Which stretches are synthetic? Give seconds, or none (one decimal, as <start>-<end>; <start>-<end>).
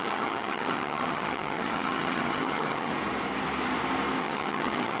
0.0-2.9; 4.2-5.0